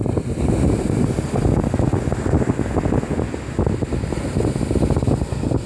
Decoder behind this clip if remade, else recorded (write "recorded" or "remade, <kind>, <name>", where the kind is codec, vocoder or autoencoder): recorded